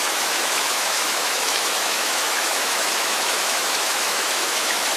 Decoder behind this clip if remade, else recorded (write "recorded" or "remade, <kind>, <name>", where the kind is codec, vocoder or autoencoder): remade, autoencoder, DAC-VAE